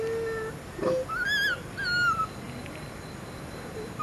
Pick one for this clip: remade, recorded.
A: recorded